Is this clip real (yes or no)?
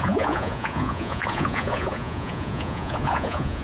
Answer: no